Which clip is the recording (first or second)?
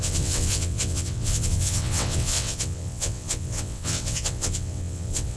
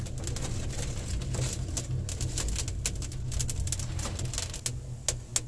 second